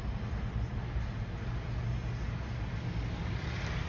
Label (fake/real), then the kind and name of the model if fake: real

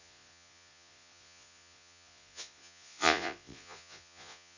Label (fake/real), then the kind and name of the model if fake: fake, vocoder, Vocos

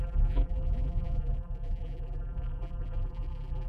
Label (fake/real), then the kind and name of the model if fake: fake, vocoder, BigVGAN v2